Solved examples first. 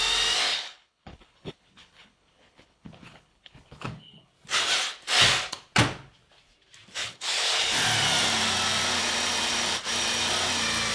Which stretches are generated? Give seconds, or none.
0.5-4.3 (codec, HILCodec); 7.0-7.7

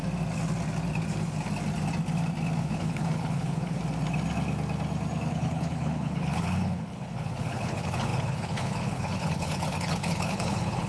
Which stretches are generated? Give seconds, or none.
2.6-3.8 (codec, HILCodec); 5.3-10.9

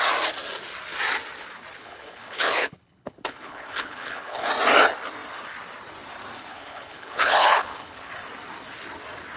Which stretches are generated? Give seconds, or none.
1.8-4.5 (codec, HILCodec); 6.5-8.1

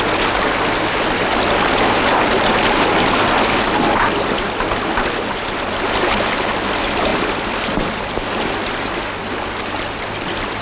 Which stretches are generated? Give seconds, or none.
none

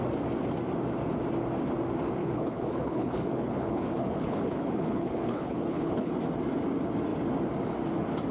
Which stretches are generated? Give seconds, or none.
2.2-6.1 (codec, HILCodec)

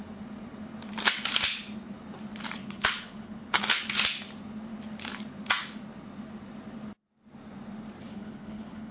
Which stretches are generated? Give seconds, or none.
2.6-3.9 (codec, HILCodec); 8.1-8.9

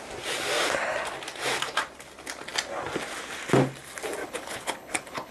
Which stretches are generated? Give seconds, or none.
4.2-5.3 (codec, HILCodec)

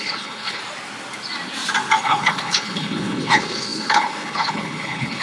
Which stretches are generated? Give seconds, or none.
0.0-0.6 (codec, HILCodec); 2.0-5.2